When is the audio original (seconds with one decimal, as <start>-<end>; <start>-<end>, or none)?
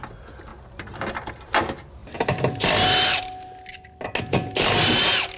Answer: 0.0-5.4